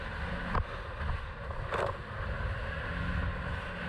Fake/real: real